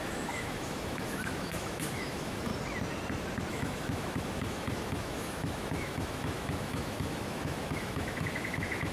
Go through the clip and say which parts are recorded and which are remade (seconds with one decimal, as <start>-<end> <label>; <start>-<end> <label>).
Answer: 0.0-2.5 remade; 2.5-3.5 recorded; 3.5-8.9 remade